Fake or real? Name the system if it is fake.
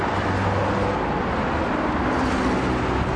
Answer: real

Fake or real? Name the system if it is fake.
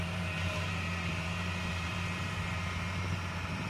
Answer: fake, vocoder, BigVGAN v2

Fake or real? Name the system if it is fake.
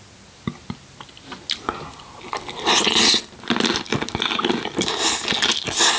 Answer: real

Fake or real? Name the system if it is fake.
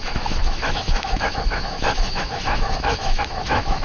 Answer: fake, autoencoder, DAC-VAE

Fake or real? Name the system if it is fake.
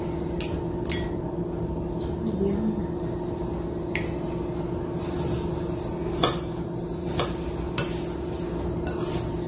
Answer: real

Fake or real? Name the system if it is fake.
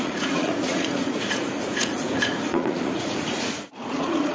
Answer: fake, vocoder, Vocos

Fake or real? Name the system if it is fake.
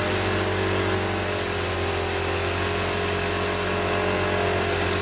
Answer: real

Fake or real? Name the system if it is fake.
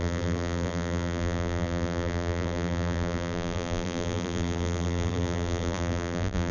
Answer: fake, vocoder, BigVGAN v2